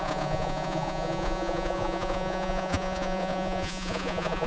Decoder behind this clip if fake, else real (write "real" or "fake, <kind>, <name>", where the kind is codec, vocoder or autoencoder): fake, vocoder, Vocos